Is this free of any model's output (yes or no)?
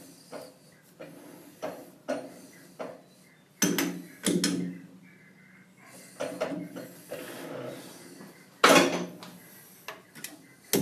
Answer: yes